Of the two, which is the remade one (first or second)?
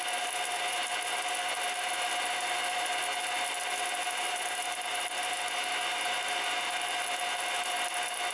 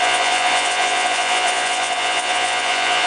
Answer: second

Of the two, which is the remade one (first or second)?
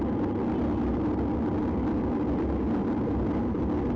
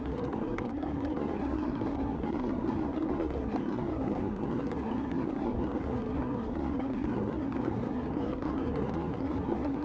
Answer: second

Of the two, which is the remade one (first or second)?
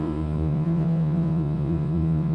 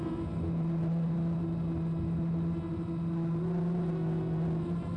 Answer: first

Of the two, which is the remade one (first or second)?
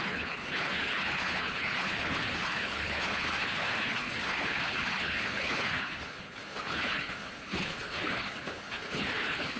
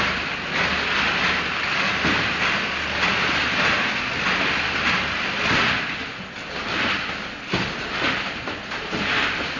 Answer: first